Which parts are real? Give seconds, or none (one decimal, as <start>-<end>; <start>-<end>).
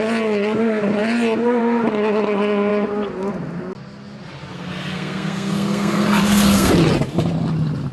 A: 0.0-4.5; 6.7-7.9